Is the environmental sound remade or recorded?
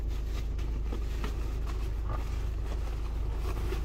recorded